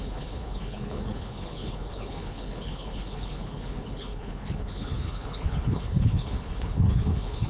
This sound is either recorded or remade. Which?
remade